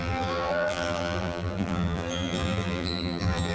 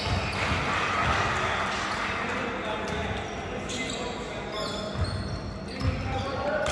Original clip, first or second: second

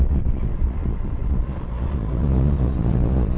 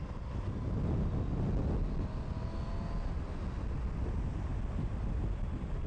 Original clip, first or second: second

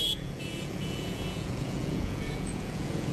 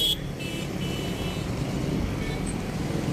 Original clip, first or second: second